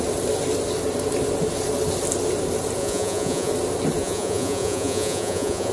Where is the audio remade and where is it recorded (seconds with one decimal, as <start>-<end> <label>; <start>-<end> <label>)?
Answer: 0.0-2.8 recorded; 2.8-3.5 remade; 3.5-4.0 recorded; 4.0-5.7 remade